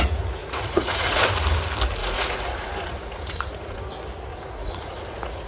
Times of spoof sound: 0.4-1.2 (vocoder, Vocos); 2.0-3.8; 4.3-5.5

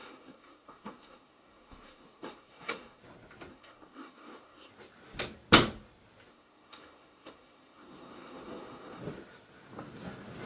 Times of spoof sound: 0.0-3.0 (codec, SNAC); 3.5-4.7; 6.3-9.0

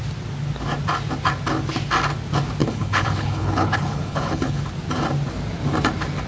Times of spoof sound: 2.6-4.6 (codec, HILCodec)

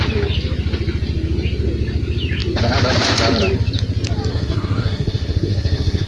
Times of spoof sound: 4.3-6.1 (codec, SNAC)

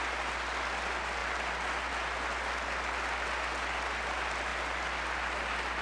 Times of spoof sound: none

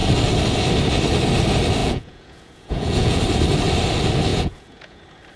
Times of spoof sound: 1.8-3.2 (vocoder, Vocos); 4.3-5.0

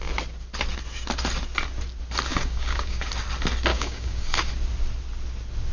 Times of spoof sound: 2.3-3.1 (codec, DAC); 3.7-4.5

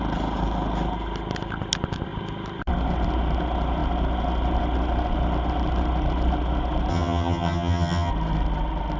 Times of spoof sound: 6.9-8.1 (vocoder, HiFi-GAN)